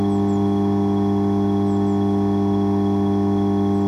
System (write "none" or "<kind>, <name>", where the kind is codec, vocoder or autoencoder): none